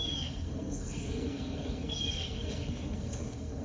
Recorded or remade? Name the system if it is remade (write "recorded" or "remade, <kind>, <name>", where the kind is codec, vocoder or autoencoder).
remade, codec, SNAC